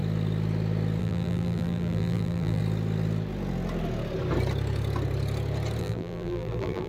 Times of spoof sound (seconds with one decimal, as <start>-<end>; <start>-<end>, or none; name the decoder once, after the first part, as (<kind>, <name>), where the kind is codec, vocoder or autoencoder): 1.0-2.6 (vocoder, BigVGAN v2); 5.8-6.9